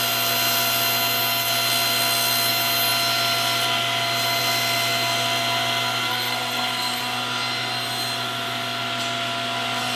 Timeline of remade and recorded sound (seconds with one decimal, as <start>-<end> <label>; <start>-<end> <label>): 0.0-6.1 recorded; 6.1-7.0 remade; 7.0-10.0 recorded